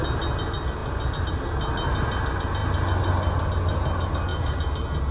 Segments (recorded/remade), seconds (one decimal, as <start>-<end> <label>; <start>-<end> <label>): 0.0-5.1 recorded